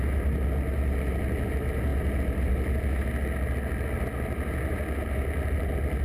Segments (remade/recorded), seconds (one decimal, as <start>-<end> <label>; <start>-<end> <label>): 0.0-6.0 recorded